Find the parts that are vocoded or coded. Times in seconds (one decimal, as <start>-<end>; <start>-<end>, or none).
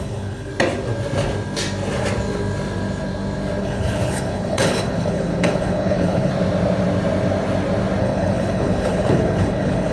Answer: 0.0-0.5; 3.6-6.3; 8.0-9.9